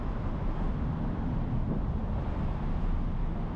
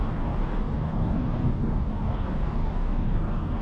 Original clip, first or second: first